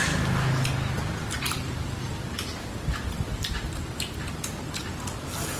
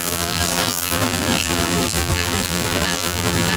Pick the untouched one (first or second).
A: first